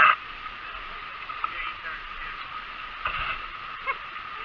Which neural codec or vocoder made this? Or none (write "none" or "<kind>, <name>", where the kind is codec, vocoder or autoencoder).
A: none